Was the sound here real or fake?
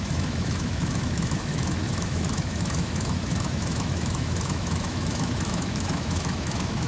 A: fake